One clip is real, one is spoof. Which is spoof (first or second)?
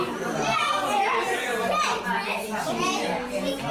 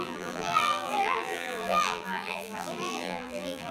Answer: second